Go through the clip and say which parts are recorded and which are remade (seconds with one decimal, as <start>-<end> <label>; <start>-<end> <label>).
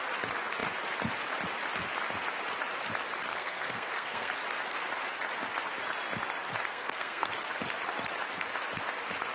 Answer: 0.0-3.3 recorded; 3.3-4.3 remade; 4.3-6.7 recorded; 6.7-7.3 remade; 7.3-9.3 recorded